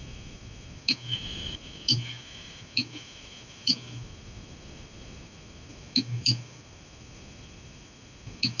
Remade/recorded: remade